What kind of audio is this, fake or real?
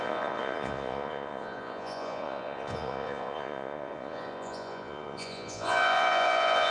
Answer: fake